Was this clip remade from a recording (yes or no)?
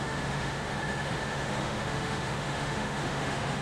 yes